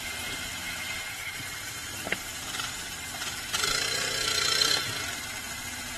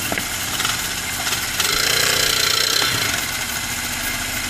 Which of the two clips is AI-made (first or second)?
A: first